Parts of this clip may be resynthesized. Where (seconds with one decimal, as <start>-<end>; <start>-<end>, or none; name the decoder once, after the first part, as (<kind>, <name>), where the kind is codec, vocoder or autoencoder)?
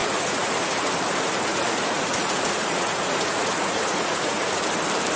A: 0.0-0.9 (vocoder, Vocos); 1.5-4.6